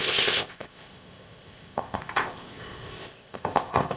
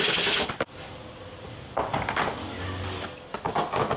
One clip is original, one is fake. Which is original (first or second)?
second